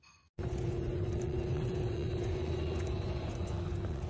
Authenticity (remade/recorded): remade